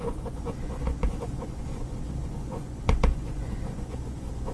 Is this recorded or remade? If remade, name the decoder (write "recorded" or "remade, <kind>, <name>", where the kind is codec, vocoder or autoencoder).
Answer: remade, vocoder, Vocos